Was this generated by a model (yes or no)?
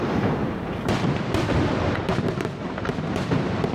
yes